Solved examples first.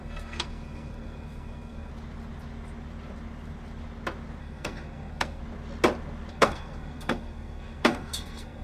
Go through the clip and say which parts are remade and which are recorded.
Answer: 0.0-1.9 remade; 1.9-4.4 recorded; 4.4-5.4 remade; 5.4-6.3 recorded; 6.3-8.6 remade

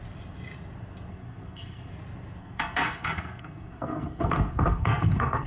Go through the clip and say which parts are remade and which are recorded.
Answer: 0.0-1.1 recorded; 1.1-1.9 remade; 1.9-2.4 recorded; 2.4-5.5 remade

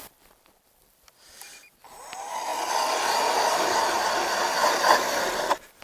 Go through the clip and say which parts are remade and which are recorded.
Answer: 0.0-4.6 remade; 4.6-5.2 recorded; 5.2-5.8 remade

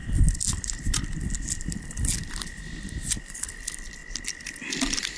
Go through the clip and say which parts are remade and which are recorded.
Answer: 0.0-5.2 recorded

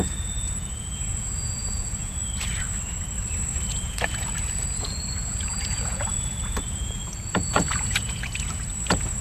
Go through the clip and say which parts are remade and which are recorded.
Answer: 0.0-2.2 remade; 2.2-3.7 recorded; 3.7-9.2 remade

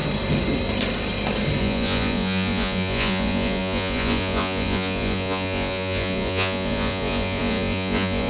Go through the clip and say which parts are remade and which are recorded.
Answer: 0.0-1.6 recorded; 1.6-8.3 remade

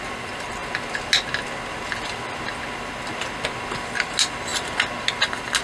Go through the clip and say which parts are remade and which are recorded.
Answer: 0.0-5.6 recorded

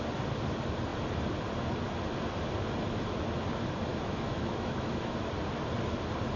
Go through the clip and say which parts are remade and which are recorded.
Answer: 0.0-3.9 recorded; 3.9-5.3 remade; 5.3-6.4 recorded